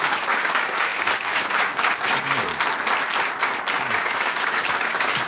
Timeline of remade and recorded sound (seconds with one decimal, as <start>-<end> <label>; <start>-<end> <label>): 0.0-2.5 remade; 2.5-3.8 recorded; 3.8-5.3 remade